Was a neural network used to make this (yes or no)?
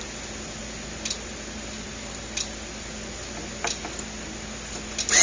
no